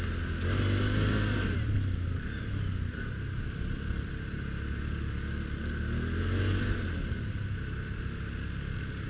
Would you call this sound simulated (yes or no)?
no